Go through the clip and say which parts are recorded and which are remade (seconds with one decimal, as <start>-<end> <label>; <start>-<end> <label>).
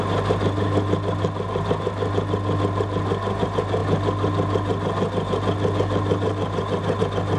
0.0-7.4 recorded